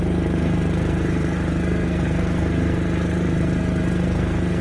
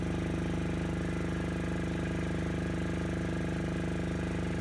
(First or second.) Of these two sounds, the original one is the second